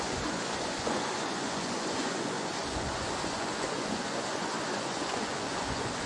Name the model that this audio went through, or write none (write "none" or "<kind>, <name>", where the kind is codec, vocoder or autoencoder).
vocoder, Vocos